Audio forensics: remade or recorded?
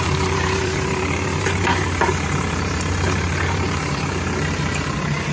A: remade